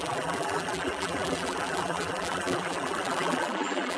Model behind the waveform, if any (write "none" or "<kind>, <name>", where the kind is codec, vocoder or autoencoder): vocoder, BigVGAN v2